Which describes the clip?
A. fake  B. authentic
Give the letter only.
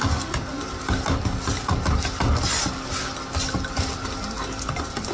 B